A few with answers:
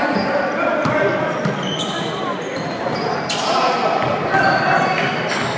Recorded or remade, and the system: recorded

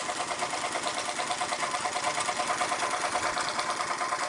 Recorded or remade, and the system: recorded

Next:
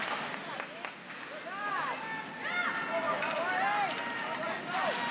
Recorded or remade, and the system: recorded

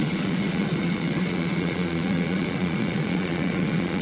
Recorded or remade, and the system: remade, vocoder, Vocos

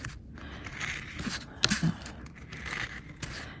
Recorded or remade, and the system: recorded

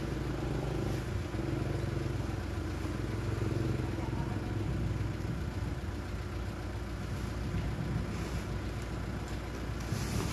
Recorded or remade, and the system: recorded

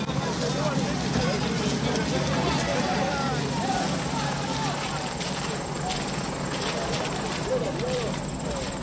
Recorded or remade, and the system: recorded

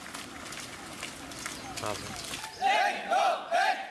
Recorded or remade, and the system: recorded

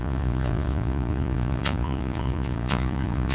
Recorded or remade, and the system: remade, vocoder, Vocos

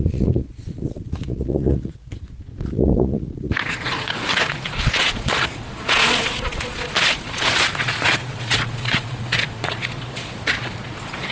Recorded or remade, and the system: remade, vocoder, Vocos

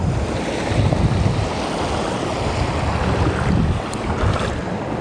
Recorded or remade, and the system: recorded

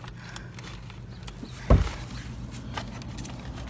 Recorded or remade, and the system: recorded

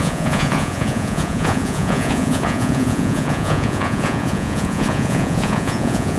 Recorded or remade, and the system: remade, vocoder, Vocos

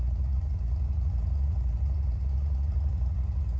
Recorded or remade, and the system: remade, vocoder, Vocos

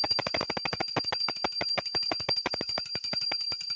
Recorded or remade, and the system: recorded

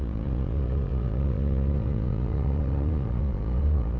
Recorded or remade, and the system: remade, vocoder, Vocos